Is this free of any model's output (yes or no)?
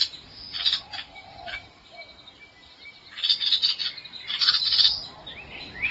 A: yes